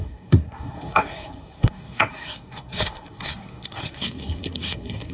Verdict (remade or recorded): remade